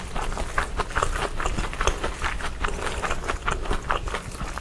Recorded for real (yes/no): yes